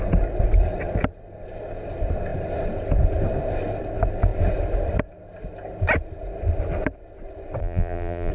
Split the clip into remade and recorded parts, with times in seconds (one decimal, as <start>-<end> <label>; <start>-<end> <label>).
0.0-7.6 recorded; 7.6-8.3 remade